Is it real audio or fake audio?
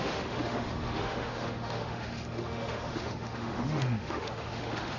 fake